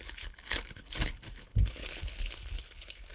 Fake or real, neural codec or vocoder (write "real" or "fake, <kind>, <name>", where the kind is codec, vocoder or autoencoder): fake, codec, HILCodec